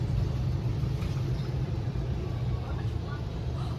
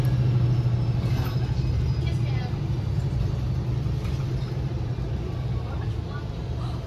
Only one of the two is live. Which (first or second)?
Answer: second